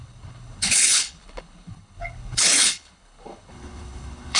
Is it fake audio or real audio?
fake